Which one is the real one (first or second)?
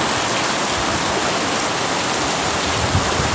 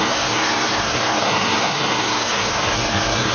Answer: first